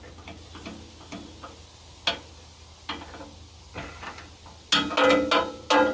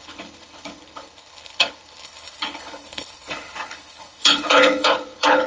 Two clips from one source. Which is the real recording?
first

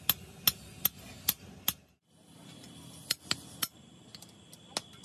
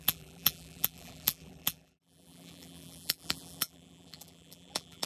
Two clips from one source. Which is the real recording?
first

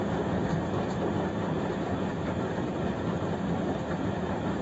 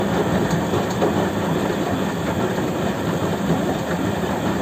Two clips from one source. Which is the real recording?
second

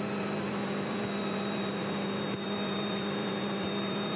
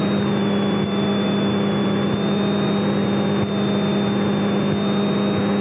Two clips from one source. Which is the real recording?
second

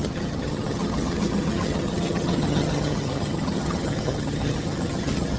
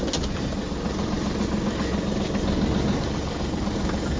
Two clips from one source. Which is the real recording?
second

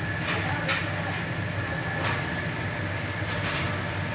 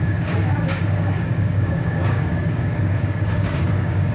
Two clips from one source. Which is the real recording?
first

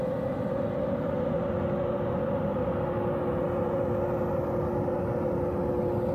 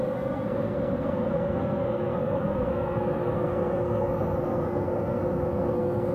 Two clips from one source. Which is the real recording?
first